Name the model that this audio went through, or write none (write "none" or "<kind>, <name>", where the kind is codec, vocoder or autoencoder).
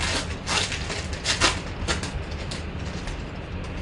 none